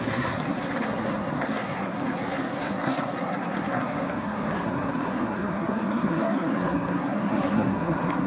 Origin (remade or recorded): remade